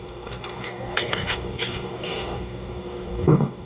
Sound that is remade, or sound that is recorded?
remade